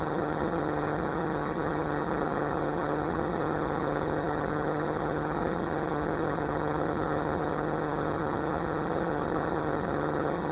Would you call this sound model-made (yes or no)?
yes